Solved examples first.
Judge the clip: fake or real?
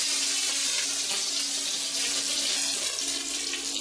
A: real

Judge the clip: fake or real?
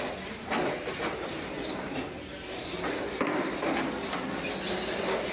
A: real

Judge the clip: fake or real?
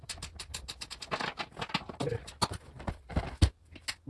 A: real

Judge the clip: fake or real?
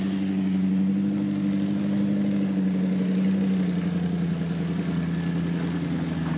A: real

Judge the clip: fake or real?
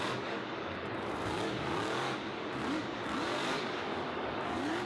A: fake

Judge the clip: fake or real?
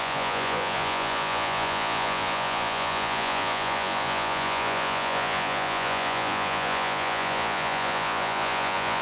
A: fake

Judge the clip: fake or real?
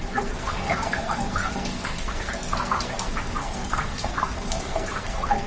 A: fake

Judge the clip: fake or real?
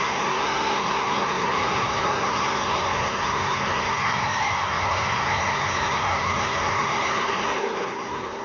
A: fake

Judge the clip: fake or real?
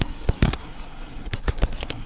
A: fake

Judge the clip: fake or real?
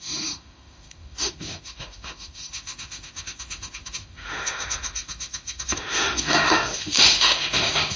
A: fake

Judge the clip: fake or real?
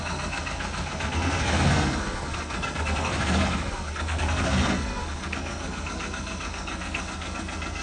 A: fake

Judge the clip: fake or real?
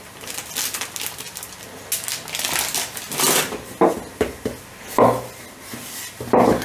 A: real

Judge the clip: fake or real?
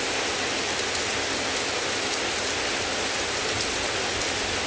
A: real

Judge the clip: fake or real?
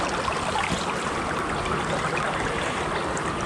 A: real